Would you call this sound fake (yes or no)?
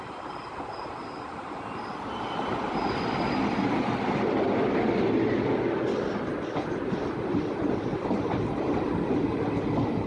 no